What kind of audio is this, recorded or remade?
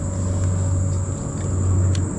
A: recorded